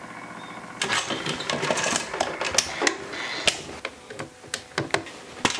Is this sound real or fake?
real